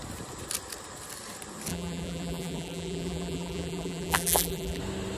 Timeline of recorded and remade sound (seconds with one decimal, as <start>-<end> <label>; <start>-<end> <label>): 0.0-1.7 recorded; 1.7-4.8 remade; 4.8-5.2 recorded